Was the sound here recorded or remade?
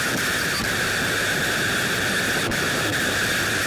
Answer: recorded